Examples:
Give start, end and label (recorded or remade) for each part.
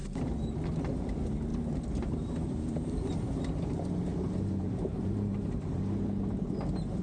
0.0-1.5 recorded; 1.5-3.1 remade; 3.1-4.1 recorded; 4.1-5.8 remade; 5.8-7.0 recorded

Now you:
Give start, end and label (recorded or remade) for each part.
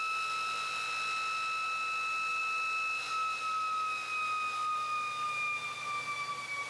0.0-6.7 recorded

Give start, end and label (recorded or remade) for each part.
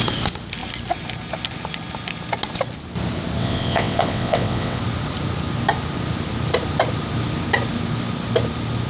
0.0-3.4 recorded; 3.4-4.8 remade; 4.8-8.9 recorded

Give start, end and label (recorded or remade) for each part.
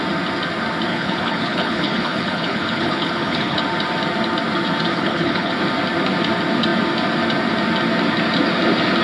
0.0-0.9 recorded; 0.9-3.6 remade; 3.6-4.9 recorded; 4.9-5.5 remade; 5.5-9.0 recorded